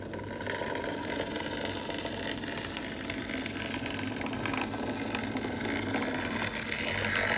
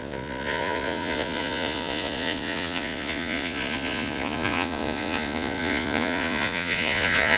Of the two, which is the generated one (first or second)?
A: second